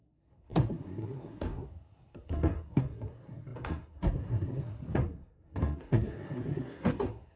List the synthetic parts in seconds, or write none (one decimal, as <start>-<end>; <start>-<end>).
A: 0.0-7.4

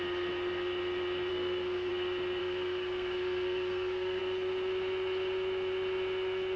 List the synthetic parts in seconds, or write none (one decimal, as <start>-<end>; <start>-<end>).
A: 1.3-1.9; 2.4-4.2

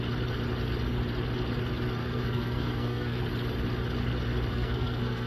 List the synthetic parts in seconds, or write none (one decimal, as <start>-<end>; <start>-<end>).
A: 2.0-3.2; 4.5-5.3

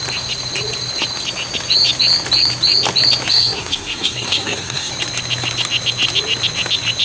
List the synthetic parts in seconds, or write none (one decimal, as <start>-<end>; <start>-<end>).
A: 3.3-4.9

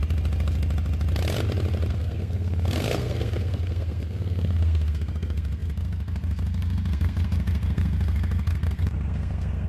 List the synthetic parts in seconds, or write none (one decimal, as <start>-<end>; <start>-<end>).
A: 1.9-9.7